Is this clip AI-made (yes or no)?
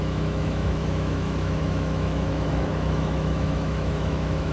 yes